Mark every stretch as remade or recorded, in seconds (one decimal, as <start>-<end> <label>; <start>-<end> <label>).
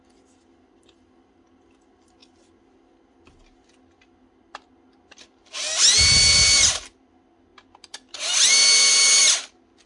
0.0-9.9 recorded